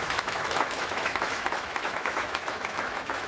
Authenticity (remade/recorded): remade